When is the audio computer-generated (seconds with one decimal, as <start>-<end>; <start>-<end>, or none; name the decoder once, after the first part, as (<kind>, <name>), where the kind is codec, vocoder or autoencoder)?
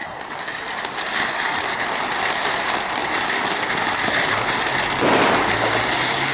0.0-1.7 (vocoder, BigVGAN v2)